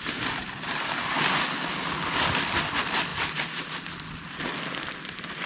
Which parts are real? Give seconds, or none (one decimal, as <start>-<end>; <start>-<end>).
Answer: 0.0-5.5

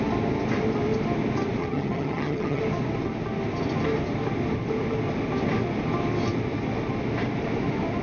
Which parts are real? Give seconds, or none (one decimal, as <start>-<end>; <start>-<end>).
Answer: 0.0-1.6; 2.6-8.0

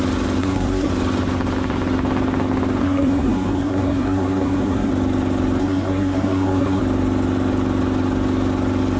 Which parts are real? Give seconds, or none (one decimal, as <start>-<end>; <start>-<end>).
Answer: 0.0-0.4; 0.9-2.8; 4.9-5.6; 6.8-9.0

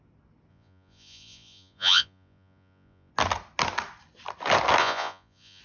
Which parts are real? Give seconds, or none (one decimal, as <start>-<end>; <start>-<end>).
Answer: 0.0-0.5; 3.1-4.8